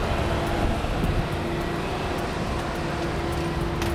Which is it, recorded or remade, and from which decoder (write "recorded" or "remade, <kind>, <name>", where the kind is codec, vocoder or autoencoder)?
recorded